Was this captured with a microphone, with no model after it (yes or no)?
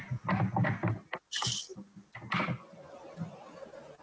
yes